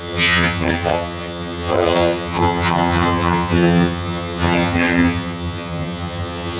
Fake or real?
fake